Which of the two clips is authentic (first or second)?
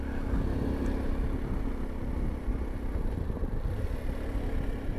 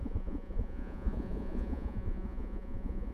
first